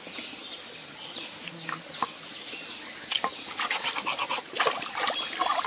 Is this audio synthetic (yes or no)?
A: no